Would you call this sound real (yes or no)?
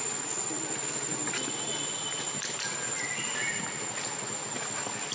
yes